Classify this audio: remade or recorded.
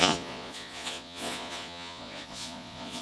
remade